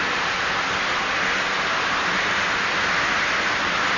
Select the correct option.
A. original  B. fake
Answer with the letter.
A